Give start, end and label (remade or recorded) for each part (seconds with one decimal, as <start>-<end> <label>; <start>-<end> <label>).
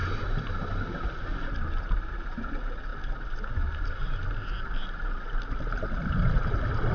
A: 0.0-6.9 recorded